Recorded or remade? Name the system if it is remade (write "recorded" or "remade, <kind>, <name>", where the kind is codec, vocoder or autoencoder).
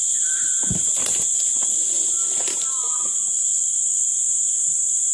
recorded